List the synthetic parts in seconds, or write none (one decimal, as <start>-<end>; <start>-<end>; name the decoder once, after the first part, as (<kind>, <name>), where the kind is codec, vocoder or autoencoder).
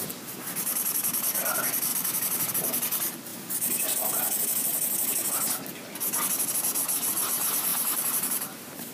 1.9-2.5 (vocoder, BigVGAN v2); 7.7-8.9